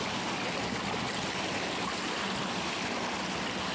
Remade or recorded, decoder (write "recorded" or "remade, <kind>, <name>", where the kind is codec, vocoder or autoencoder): recorded